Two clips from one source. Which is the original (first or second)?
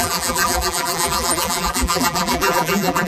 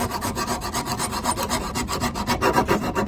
second